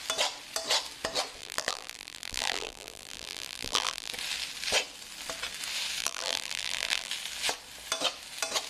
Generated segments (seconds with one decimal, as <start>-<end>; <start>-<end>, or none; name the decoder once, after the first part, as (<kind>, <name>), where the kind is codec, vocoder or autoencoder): 1.4-4.1 (vocoder, BigVGAN v2); 6.0-7.1